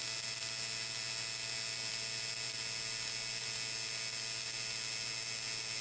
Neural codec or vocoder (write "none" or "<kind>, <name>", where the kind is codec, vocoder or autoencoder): none